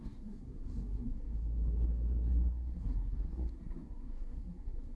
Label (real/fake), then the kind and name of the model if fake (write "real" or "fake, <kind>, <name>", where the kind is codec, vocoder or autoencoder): fake, codec, SNAC